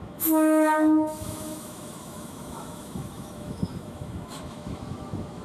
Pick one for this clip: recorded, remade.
remade